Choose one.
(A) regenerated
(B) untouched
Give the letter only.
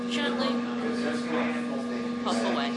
B